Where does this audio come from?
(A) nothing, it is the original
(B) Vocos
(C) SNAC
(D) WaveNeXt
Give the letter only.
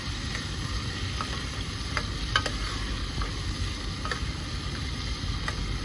A